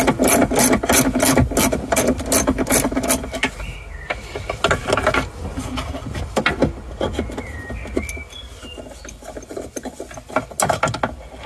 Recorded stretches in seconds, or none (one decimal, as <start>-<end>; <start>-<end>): 0.0-11.5

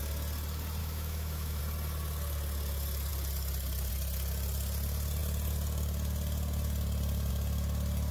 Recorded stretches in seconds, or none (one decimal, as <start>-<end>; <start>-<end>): 0.0-0.8; 1.6-8.1

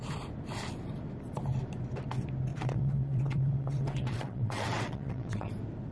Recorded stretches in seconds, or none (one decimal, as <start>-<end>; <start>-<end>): 0.0-2.5; 5.5-5.9

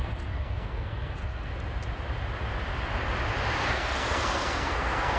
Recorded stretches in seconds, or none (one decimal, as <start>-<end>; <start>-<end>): 1.5-3.7

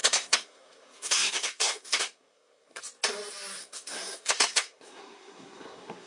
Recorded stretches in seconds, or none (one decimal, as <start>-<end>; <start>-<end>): 2.8-3.6

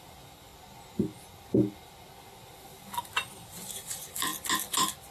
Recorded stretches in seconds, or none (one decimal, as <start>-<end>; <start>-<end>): 0.5-3.0; 4.3-5.1

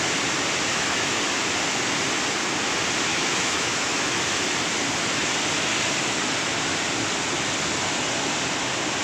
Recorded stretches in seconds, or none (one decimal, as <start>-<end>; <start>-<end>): 0.0-0.7; 1.2-3.1; 4.2-9.0

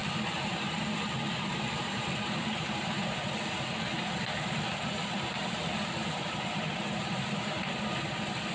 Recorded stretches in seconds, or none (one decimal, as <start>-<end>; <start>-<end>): 0.0-1.5; 2.4-3.9; 4.6-5.4; 7.8-8.5